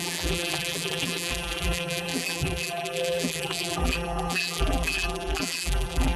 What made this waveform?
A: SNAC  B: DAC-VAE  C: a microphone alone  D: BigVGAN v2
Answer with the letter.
D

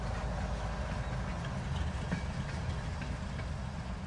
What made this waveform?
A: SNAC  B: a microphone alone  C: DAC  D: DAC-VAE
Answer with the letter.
B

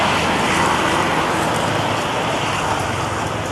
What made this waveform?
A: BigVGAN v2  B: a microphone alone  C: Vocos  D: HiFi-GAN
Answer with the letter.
B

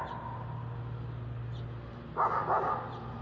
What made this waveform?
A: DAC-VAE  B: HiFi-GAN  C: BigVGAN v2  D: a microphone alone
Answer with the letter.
D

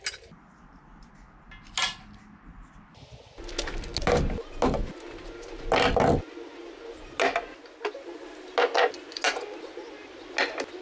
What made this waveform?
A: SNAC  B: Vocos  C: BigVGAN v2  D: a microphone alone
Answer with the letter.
D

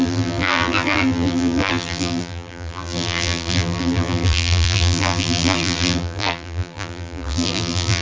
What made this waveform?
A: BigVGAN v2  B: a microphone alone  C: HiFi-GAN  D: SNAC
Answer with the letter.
A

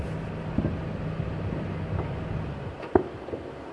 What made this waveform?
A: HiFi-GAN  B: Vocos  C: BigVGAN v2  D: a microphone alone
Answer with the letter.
D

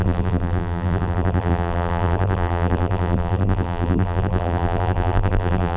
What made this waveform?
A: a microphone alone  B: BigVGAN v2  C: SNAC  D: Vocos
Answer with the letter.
B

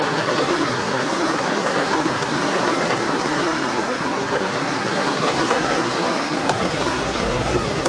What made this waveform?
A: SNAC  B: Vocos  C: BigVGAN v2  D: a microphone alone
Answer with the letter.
A